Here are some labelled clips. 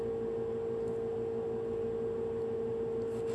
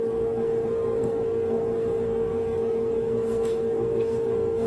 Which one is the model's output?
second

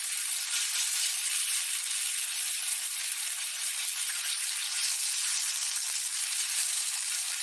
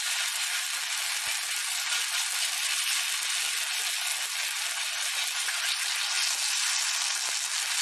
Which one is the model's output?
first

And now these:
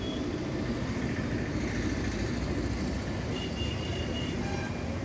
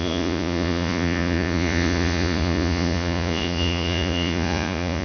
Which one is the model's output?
second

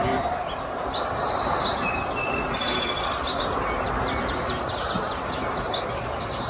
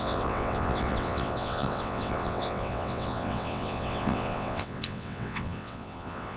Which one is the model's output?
second